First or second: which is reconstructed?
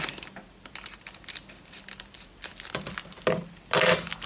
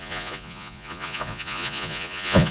second